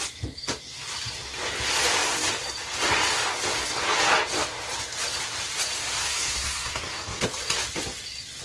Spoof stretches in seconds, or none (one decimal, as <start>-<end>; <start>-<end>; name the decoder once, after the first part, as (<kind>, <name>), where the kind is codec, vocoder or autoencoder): 6.0-7.2 (codec, SNAC)